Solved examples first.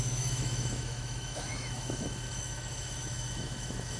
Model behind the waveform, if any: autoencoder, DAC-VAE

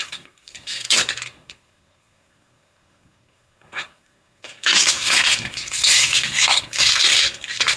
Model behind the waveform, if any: codec, SNAC